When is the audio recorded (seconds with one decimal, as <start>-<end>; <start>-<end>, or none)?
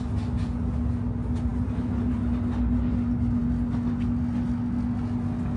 0.0-5.6